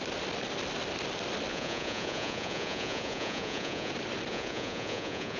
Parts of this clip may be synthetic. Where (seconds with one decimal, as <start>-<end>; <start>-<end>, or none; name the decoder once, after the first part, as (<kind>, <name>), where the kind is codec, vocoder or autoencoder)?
1.5-3.9 (vocoder, Vocos); 4.3-5.4